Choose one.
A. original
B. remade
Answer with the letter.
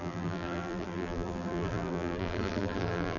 B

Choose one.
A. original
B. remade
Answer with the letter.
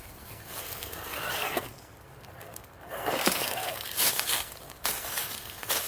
B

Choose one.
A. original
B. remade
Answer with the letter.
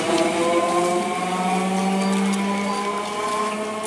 A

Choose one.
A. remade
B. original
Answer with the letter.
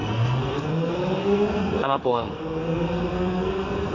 A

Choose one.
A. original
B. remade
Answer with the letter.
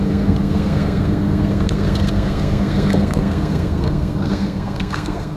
B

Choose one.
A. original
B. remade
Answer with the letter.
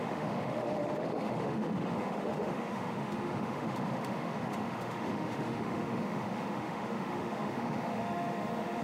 B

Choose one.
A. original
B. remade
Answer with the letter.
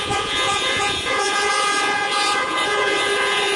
B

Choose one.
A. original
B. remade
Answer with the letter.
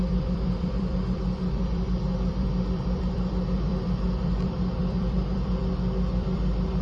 B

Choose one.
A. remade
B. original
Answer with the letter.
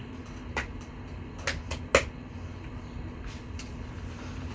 B